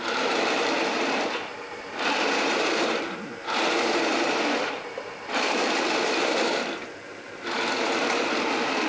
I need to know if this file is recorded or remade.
remade